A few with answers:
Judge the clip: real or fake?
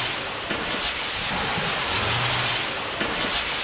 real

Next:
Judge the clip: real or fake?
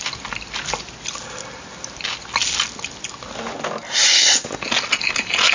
real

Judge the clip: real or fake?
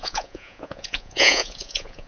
fake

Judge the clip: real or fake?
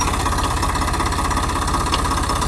real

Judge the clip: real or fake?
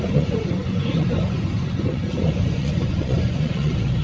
fake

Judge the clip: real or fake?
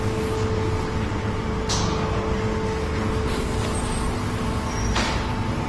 real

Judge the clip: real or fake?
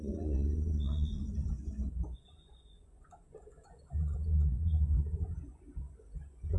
fake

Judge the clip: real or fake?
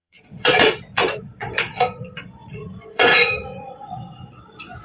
fake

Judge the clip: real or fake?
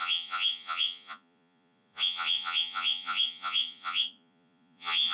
fake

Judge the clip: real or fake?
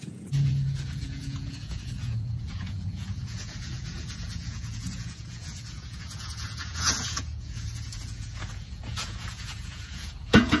fake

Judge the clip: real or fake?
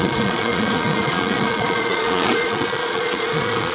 fake